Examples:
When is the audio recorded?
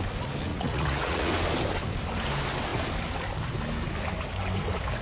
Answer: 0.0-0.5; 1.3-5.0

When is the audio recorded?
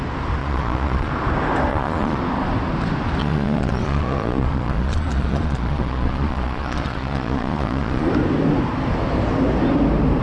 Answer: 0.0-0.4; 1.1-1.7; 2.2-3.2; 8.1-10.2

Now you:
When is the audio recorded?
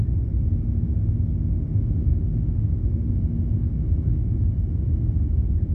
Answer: 0.0-2.1; 3.1-5.7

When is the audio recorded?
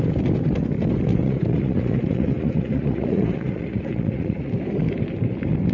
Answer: 0.0-1.1; 4.5-5.7